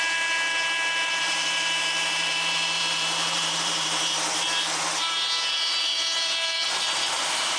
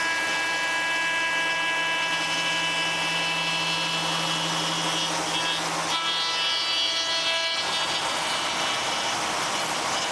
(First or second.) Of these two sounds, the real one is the second